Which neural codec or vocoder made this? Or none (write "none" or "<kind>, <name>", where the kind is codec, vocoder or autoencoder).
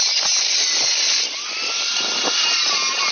none